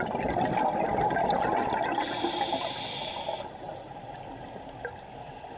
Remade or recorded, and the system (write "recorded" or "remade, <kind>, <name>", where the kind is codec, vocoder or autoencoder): recorded